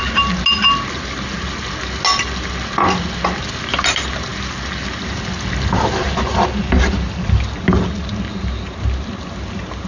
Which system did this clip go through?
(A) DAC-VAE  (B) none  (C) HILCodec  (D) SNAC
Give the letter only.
B